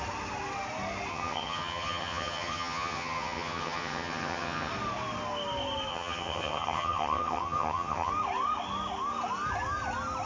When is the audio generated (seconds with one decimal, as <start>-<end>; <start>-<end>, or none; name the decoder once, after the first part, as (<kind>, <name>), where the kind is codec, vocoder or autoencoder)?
1.1-4.7 (vocoder, HiFi-GAN); 5.9-8.1